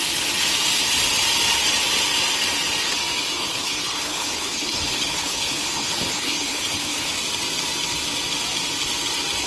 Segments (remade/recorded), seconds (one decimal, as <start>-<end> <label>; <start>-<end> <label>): 0.0-3.4 recorded; 3.4-7.1 remade; 7.1-9.5 recorded